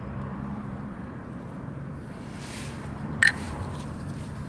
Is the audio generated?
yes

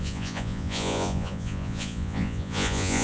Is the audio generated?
yes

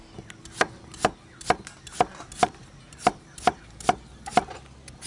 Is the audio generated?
no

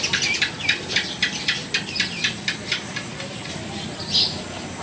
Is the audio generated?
no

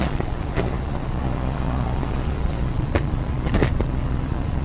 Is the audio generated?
yes